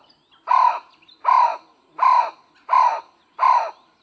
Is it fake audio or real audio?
real